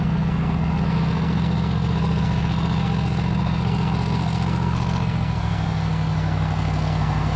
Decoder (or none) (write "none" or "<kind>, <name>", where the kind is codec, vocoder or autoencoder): codec, SNAC